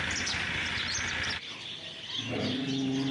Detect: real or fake real